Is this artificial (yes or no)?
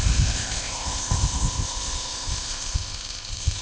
yes